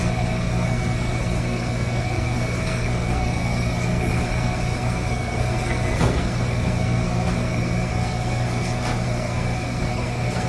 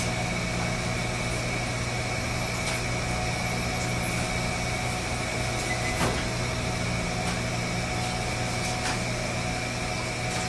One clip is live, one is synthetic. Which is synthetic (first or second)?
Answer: first